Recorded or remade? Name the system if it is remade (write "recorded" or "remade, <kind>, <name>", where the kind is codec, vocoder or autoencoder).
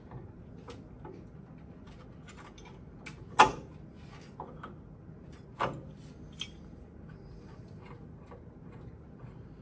recorded